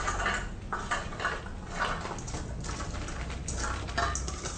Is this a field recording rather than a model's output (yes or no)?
yes